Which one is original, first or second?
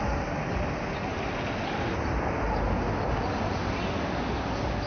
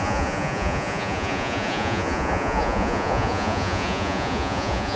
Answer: first